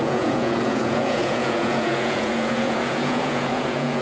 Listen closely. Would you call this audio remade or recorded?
remade